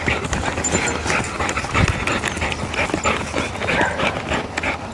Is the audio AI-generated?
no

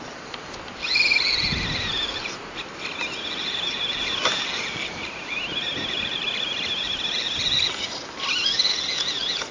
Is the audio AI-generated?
no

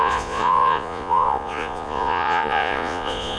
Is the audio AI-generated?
yes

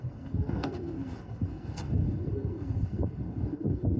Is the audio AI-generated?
yes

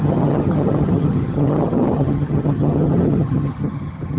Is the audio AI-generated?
yes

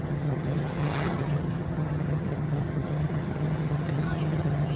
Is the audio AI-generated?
yes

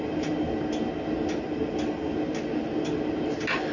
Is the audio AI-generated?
no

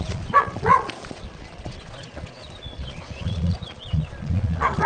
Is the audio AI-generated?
yes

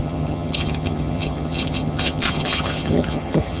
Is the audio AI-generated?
yes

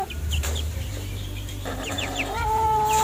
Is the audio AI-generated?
yes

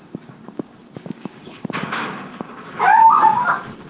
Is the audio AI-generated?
yes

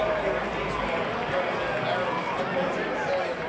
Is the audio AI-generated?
no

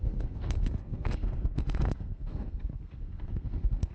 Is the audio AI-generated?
yes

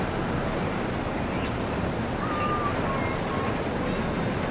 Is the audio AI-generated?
no